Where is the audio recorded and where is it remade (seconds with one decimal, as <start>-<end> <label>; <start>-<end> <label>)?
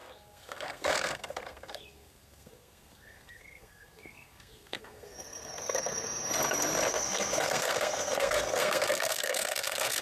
0.0-6.3 remade; 6.3-6.9 recorded; 6.9-10.0 remade